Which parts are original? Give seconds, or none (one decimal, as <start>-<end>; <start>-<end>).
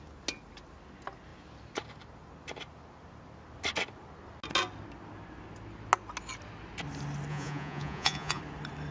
0.0-7.3; 8.4-8.9